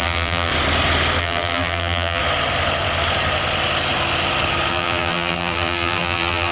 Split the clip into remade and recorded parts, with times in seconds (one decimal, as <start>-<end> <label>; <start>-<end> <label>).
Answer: 0.0-0.5 remade; 0.5-1.2 recorded; 1.2-2.2 remade; 2.2-4.7 recorded; 4.7-6.5 remade